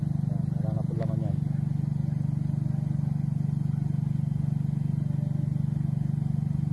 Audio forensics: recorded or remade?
recorded